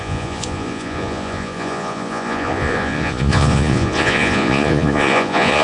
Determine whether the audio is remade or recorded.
remade